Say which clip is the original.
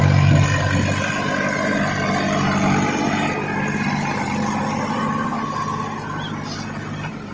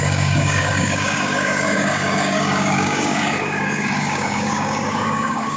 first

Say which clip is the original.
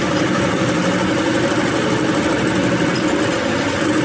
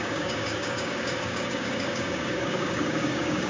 first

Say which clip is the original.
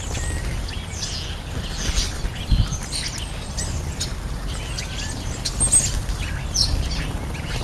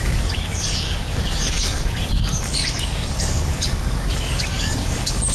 first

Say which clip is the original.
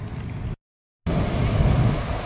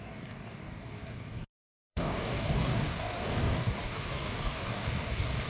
first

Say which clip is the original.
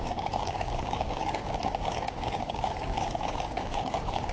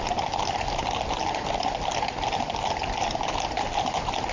second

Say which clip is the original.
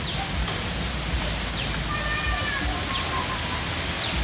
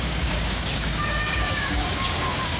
first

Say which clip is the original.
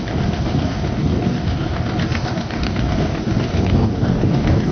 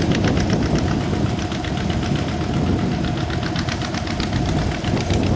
second